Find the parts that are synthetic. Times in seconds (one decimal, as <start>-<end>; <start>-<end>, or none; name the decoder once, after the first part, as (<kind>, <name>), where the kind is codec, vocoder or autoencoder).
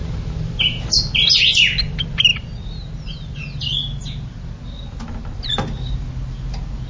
0.0-1.0 (vocoder, BigVGAN v2)